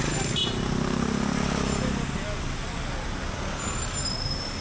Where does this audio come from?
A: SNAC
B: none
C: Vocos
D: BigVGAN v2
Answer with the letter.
B